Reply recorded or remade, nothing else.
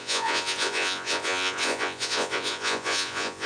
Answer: remade